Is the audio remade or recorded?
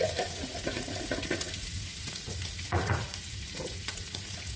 remade